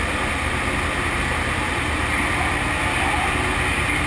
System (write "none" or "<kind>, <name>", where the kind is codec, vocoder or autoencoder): none